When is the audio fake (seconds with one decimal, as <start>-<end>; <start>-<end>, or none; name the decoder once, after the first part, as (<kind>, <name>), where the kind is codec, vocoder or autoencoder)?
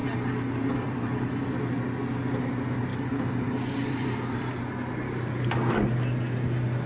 0.0-1.6 (vocoder, BigVGAN v2); 2.9-4.6